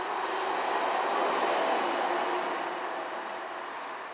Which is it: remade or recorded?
recorded